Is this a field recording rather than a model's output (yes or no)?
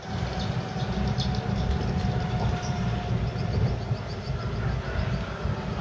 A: yes